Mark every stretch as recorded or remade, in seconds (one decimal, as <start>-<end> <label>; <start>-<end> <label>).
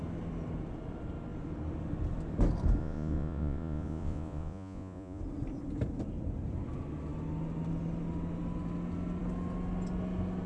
0.0-2.8 recorded; 2.8-5.2 remade; 5.2-10.5 recorded